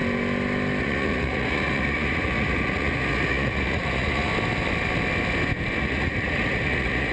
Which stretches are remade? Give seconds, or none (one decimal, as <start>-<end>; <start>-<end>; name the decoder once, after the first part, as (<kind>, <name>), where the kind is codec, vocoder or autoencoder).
0.8-4.3 (vocoder, Vocos); 5.8-7.1